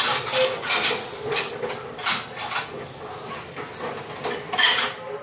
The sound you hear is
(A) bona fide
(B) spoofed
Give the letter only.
A